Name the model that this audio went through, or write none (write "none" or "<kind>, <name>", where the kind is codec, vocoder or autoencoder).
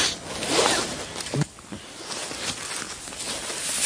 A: none